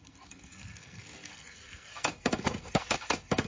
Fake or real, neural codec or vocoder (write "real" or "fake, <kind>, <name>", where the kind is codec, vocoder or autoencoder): fake, codec, SNAC